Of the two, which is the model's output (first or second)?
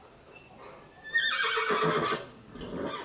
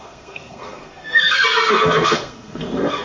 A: second